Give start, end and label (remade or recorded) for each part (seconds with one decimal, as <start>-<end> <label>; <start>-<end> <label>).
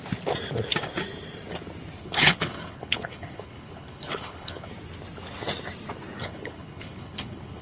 0.0-2.0 recorded; 2.0-4.7 remade; 4.7-6.2 recorded; 6.2-7.6 remade